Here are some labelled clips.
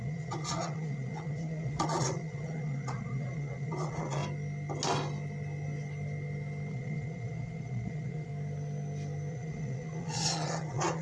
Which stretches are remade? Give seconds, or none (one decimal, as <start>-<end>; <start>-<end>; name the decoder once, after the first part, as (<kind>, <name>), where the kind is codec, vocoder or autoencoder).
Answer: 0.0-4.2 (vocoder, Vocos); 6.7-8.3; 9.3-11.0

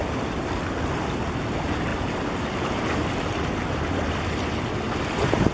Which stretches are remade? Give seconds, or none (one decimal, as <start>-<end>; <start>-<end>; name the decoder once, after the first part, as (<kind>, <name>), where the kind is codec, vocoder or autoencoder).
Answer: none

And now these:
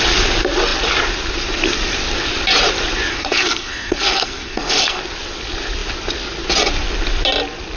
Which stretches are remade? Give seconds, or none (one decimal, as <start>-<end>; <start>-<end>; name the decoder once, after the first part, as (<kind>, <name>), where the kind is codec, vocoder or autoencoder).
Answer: 3.1-5.0 (codec, SNAC)

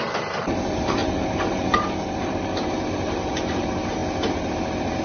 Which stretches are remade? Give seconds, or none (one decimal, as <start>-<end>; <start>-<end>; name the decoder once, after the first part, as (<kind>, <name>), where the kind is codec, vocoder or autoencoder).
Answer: 0.0-5.0 (vocoder, BigVGAN v2)

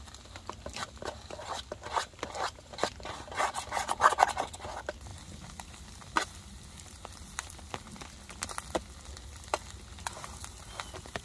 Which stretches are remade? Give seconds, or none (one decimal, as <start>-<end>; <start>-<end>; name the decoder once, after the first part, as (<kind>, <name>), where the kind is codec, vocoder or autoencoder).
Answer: none